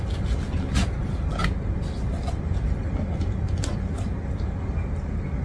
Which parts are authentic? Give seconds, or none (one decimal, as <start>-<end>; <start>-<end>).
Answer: 0.0-5.4